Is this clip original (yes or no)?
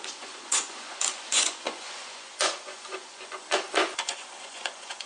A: no